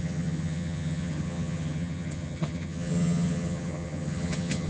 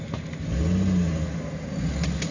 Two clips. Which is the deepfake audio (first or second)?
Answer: first